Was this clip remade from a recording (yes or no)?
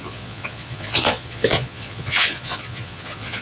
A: yes